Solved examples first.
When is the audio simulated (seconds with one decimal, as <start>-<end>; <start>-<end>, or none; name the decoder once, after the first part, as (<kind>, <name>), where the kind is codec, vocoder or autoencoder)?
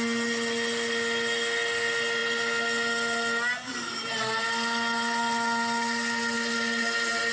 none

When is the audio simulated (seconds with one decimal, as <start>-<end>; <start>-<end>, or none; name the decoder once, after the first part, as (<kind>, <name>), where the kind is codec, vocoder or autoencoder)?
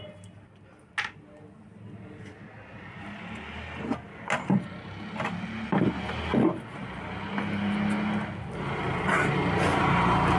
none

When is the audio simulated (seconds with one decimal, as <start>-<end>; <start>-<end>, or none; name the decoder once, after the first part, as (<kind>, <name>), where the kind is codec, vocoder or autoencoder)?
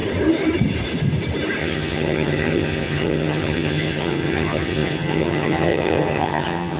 1.6-6.8 (vocoder, HiFi-GAN)